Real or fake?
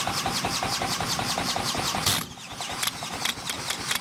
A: real